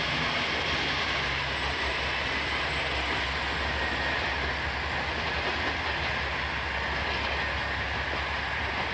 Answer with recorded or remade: recorded